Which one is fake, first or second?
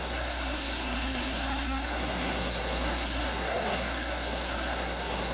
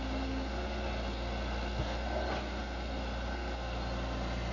first